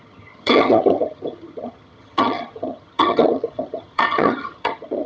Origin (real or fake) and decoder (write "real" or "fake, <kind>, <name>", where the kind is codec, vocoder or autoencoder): fake, vocoder, HiFi-GAN